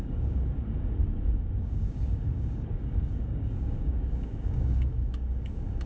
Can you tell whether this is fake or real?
fake